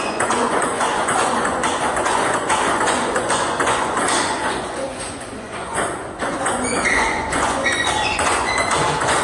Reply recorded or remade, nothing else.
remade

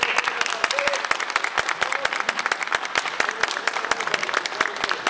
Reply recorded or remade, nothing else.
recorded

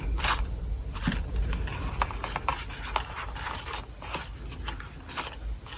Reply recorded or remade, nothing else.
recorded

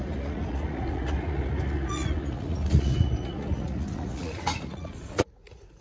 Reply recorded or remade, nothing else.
remade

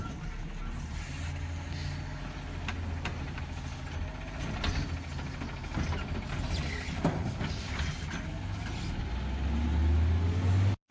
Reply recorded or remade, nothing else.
recorded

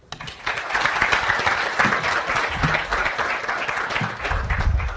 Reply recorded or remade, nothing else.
recorded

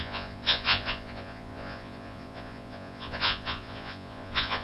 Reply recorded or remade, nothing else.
remade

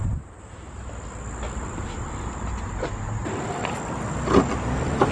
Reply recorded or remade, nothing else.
recorded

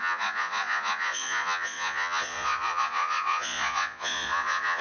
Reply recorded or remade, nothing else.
remade